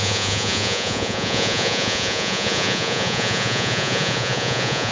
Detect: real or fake fake